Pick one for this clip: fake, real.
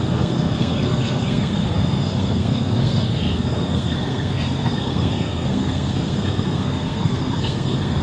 fake